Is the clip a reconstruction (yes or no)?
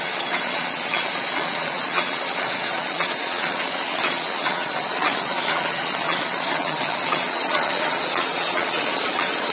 yes